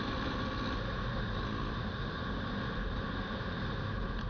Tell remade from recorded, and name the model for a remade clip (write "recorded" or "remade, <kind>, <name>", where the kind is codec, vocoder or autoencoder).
recorded